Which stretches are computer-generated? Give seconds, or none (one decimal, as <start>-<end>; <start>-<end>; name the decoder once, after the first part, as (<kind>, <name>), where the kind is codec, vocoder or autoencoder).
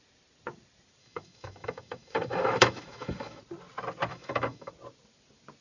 1.0-3.4 (autoencoder, DAC-VAE); 4.1-4.7